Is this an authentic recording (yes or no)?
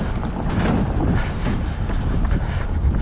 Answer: yes